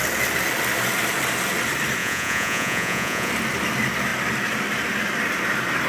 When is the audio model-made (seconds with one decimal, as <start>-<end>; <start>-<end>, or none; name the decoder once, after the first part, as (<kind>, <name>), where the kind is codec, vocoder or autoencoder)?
2.0-3.3 (vocoder, Vocos)